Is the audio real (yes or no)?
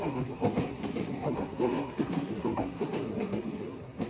no